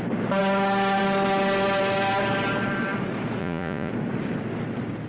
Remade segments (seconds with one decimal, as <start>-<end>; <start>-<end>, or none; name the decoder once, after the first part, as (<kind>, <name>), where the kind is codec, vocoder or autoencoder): 3.4-3.9 (vocoder, Vocos)